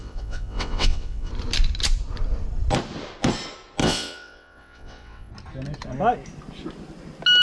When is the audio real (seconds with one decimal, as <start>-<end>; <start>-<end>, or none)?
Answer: 1.3-3.8; 5.3-7.4